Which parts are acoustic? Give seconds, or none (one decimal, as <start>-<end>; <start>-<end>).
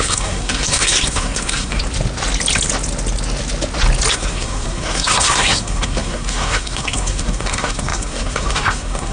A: 1.8-4.1